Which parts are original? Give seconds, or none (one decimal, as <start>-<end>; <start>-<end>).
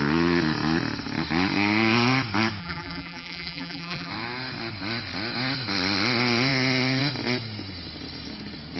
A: 0.0-2.6; 4.1-8.8